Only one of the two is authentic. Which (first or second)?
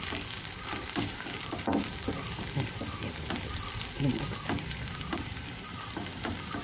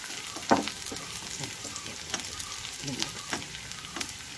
second